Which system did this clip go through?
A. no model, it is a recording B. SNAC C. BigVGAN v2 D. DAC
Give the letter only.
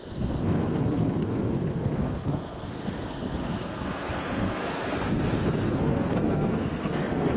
B